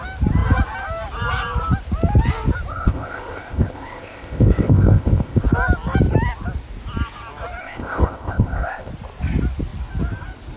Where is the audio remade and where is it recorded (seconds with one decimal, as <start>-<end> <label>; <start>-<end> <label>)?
0.0-2.7 recorded; 2.7-5.4 remade; 5.4-7.6 recorded; 7.6-8.9 remade; 8.9-10.6 recorded